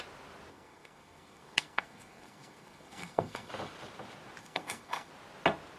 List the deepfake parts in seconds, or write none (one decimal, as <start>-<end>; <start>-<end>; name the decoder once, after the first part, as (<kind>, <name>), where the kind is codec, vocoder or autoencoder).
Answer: 0.5-3.5 (codec, SNAC); 4.4-5.1